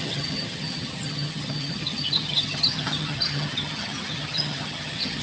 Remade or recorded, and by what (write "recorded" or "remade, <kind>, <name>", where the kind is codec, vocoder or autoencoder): remade, vocoder, HiFi-GAN